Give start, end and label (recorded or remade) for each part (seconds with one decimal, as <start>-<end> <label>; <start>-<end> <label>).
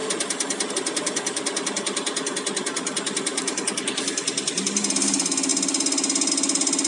0.0-6.9 recorded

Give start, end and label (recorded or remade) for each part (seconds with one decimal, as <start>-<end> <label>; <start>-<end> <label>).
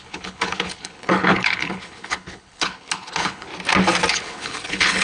0.0-3.5 remade; 3.5-4.1 recorded; 4.1-5.0 remade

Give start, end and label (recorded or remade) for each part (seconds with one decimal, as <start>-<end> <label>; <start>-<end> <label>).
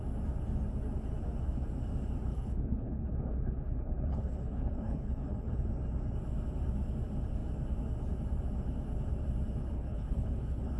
0.0-2.3 recorded; 2.3-5.7 remade; 5.7-9.6 recorded; 9.6-10.8 remade